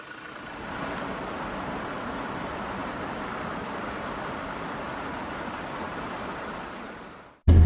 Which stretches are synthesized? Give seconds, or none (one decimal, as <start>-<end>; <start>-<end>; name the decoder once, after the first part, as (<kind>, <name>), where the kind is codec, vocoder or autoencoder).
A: none